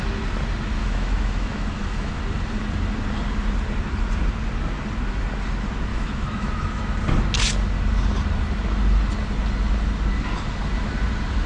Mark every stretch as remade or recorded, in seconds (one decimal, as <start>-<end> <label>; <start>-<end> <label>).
0.0-0.8 recorded; 0.8-2.2 remade; 2.2-5.9 recorded; 5.9-6.8 remade; 6.8-11.5 recorded